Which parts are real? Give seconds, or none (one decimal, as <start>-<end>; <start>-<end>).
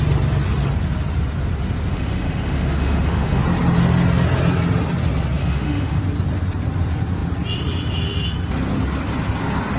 0.0-1.9; 3.4-5.4; 6.0-9.8